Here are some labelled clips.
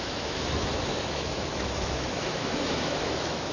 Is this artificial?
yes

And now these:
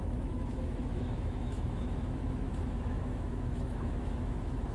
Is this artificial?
yes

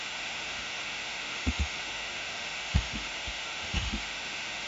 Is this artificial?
yes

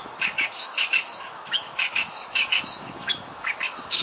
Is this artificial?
yes